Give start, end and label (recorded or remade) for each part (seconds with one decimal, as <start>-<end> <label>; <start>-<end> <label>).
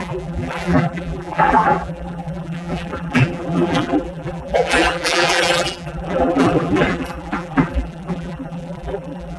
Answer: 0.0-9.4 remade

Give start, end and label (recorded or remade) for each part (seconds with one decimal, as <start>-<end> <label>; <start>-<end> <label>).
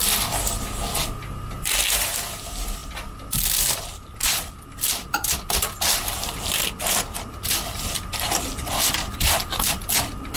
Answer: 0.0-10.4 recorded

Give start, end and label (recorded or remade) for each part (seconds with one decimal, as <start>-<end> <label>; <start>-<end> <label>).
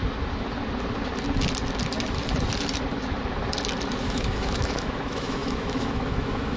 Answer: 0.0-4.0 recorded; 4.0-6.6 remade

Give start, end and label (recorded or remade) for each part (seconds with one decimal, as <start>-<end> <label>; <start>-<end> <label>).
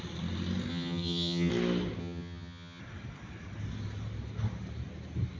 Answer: 0.0-0.7 recorded; 0.7-1.5 remade; 1.5-2.0 recorded; 2.0-2.8 remade; 2.8-5.4 recorded